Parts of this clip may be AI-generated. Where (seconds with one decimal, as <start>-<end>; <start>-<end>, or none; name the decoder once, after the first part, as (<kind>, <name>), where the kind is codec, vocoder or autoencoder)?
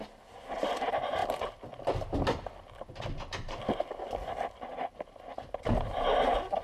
none